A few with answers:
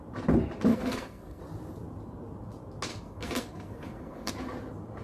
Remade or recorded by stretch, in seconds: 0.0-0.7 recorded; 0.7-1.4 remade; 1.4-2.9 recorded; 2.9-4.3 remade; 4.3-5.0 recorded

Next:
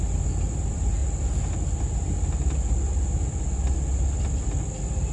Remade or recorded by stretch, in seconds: 0.0-5.1 recorded

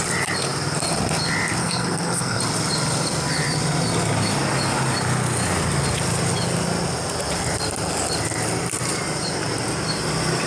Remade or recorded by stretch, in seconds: 0.0-1.6 recorded; 1.6-2.4 remade; 2.4-10.5 recorded

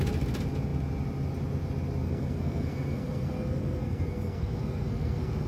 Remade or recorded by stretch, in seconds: 0.0-2.0 recorded; 2.0-5.5 remade

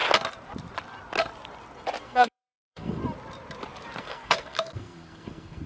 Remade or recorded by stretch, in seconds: 0.0-2.0 recorded; 2.0-3.0 remade; 3.0-4.0 recorded; 4.0-5.7 remade

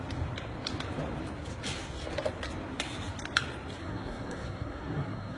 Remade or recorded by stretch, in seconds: 0.0-3.8 recorded; 3.8-5.4 remade

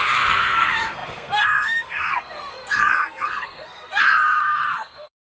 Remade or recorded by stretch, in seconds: 0.0-5.2 remade